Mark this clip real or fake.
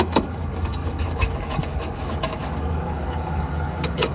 fake